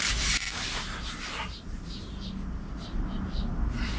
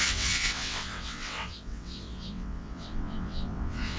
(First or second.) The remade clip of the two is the second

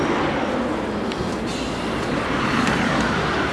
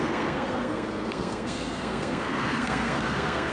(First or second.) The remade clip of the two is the second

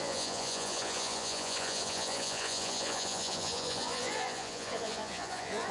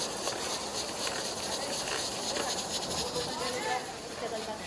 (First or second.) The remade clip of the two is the first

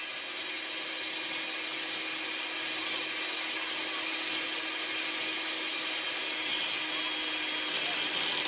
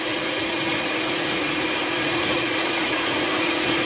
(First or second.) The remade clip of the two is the second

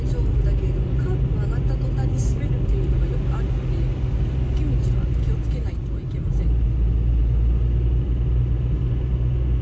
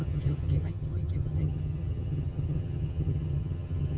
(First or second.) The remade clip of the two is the second